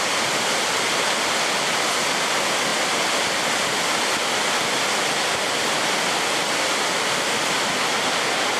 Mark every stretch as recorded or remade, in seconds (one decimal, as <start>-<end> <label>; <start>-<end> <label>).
0.0-8.6 recorded